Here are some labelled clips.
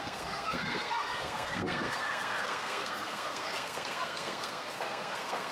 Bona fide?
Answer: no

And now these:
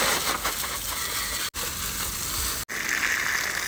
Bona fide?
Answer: yes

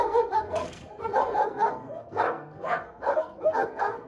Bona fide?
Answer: no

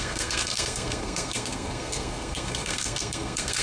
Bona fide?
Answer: no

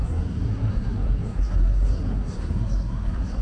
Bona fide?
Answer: no